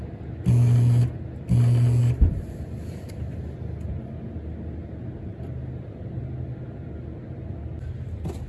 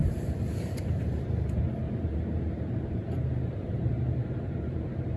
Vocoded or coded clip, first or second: second